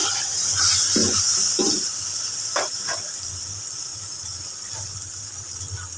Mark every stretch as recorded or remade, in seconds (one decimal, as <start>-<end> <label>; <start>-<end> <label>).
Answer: 0.0-0.6 remade; 0.6-1.0 recorded; 1.0-3.1 remade; 3.1-3.9 recorded; 3.9-4.4 remade; 4.4-6.0 recorded